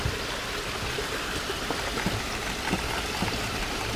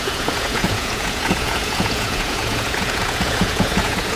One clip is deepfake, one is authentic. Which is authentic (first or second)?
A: first